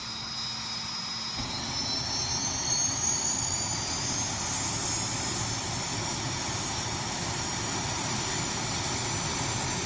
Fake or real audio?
real